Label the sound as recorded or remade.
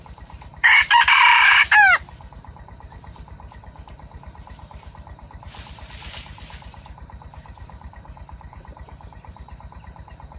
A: remade